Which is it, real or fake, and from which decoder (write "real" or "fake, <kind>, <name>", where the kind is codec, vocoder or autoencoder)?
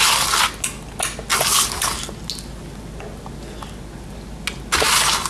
real